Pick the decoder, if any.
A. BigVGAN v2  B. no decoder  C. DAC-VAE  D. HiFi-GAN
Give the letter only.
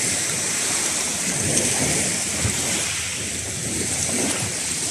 B